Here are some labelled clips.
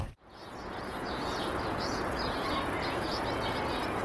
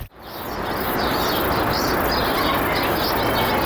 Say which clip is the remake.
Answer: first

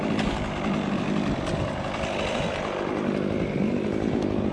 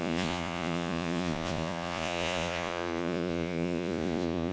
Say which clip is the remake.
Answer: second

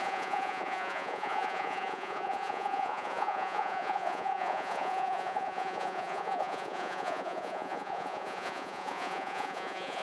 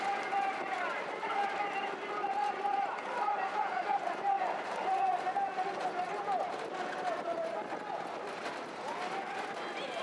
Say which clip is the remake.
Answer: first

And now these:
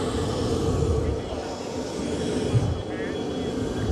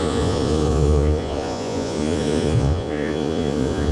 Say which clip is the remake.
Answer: second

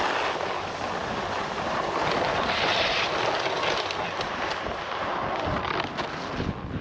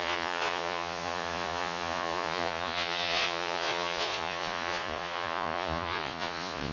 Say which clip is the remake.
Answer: second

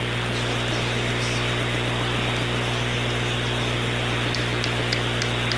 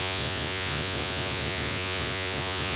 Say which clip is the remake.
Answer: second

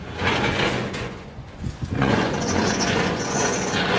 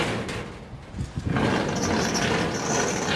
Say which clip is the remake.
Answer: first